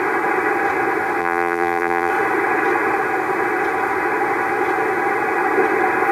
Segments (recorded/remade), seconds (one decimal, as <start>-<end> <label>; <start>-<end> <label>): 0.0-1.2 recorded; 1.2-2.1 remade; 2.1-6.1 recorded